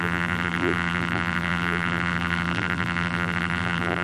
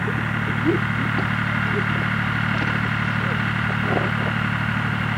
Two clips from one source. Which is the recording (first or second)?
second